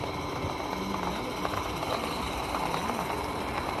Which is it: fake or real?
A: real